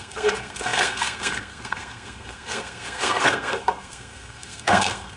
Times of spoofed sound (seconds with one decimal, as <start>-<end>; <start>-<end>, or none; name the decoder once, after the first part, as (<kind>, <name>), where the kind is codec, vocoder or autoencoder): 0.0-5.2 (codec, SNAC)